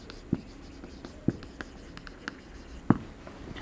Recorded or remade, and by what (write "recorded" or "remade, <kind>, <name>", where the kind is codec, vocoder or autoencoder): recorded